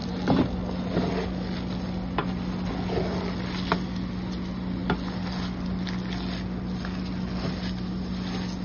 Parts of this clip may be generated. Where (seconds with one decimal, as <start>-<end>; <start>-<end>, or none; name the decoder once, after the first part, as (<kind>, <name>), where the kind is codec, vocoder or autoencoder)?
none